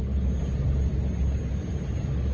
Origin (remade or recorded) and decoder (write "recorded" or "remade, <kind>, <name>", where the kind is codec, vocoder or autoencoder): recorded